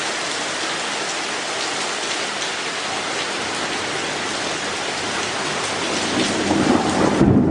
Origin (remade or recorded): recorded